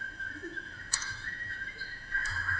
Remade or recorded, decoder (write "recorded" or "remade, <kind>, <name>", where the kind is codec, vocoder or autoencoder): remade, autoencoder, DAC-VAE